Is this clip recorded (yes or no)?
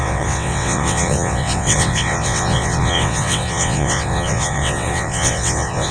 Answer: no